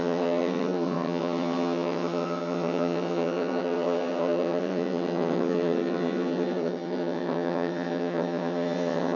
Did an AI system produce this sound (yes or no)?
yes